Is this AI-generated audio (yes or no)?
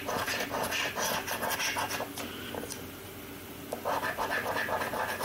no